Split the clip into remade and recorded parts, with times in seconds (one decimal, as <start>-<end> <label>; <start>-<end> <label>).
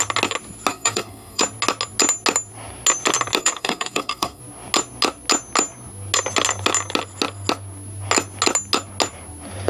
0.0-0.7 recorded; 0.7-1.4 remade; 1.4-3.4 recorded; 3.4-4.4 remade; 4.4-9.7 recorded